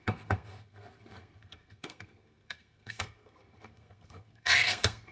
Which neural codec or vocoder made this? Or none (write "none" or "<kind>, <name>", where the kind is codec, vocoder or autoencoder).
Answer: codec, SNAC